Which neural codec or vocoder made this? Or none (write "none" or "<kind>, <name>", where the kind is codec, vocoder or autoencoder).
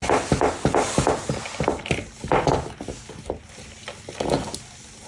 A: none